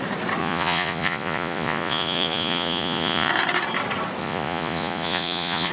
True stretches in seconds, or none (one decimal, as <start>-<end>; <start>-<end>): 0.0-0.4; 3.3-4.2